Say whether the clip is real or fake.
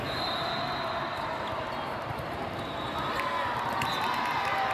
real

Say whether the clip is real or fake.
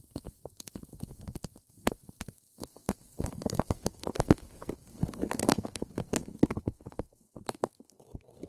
fake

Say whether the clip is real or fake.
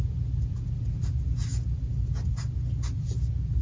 real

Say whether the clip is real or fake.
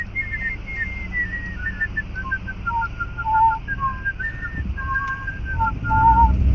real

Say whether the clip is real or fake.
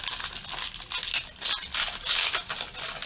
real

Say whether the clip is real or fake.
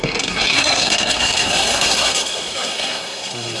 fake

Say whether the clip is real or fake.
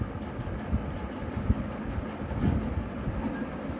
real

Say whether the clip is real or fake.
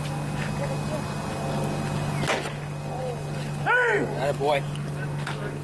real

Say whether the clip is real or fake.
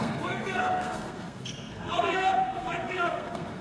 fake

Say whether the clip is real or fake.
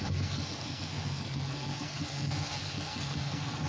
fake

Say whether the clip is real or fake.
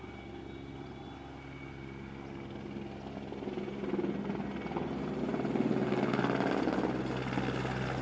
real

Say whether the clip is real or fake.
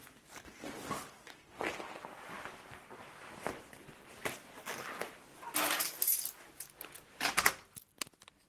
real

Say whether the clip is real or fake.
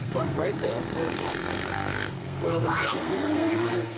fake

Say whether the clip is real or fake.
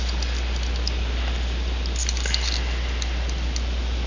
real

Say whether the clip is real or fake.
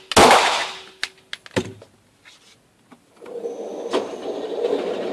real